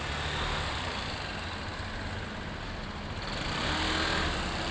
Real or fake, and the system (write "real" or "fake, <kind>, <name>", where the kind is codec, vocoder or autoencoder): real